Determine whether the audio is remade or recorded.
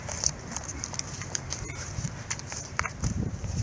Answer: remade